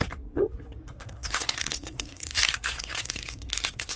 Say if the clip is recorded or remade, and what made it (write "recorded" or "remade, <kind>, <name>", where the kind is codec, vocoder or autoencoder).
remade, codec, SNAC